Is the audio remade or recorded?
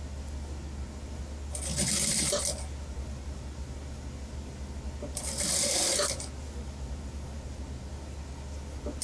recorded